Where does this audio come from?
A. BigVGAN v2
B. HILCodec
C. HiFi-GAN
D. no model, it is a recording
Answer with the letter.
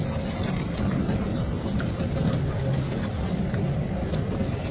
D